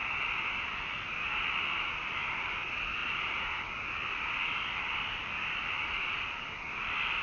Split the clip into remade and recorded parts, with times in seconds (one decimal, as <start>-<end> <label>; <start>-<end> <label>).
0.0-3.0 recorded; 3.0-3.6 remade; 3.6-7.2 recorded